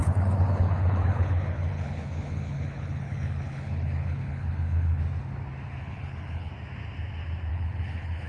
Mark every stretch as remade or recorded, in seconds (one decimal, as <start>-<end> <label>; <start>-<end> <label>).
0.0-5.0 remade; 5.0-5.8 recorded; 5.8-6.5 remade; 6.5-7.5 recorded; 7.5-8.3 remade